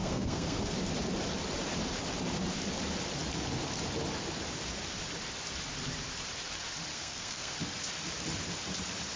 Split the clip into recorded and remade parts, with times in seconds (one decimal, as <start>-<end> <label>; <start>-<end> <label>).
0.0-0.6 remade; 0.6-6.9 recorded; 6.9-7.5 remade; 7.5-9.2 recorded